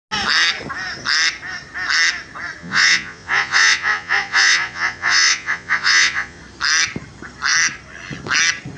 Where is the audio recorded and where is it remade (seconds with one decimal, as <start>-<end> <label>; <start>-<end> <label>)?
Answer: 0.0-2.6 recorded; 2.6-6.4 remade; 6.4-8.8 recorded